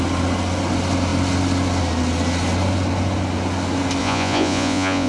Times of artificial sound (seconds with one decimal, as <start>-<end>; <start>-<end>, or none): 4.0-5.1

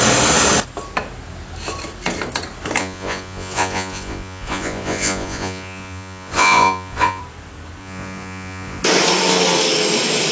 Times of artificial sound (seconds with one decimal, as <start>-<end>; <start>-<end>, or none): 2.8-7.2; 7.8-8.8

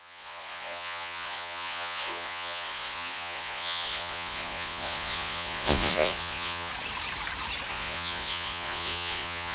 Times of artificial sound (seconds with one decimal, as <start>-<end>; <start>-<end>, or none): 0.0-6.7; 7.7-9.5

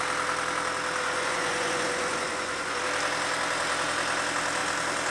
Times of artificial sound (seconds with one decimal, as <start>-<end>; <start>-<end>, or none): 1.0-2.8

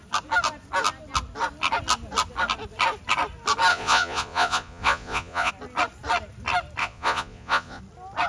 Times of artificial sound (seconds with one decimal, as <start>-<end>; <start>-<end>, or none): 3.7-5.5; 6.8-7.8